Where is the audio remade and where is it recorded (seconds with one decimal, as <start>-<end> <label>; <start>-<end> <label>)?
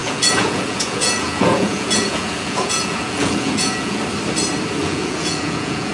0.0-4.0 remade; 4.0-4.8 recorded; 4.8-5.9 remade